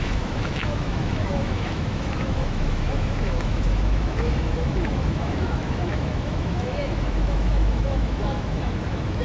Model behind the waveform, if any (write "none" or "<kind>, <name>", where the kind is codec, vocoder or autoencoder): autoencoder, DAC-VAE